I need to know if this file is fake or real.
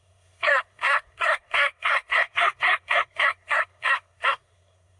fake